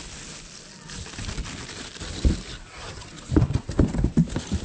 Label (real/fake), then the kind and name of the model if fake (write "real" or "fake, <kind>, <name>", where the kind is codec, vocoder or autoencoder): real